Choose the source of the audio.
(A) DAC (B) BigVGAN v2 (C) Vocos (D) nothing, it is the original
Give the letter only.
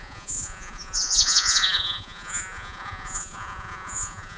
C